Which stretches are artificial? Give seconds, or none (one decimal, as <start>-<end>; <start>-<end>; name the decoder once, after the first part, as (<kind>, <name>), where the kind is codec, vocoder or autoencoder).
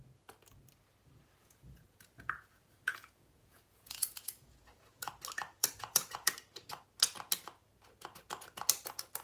1.4-5.1 (vocoder, Vocos); 5.6-6.3